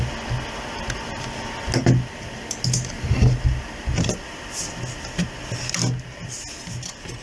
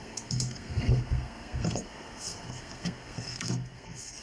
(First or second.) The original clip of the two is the first